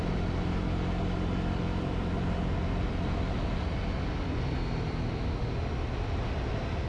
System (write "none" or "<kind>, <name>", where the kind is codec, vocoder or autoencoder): none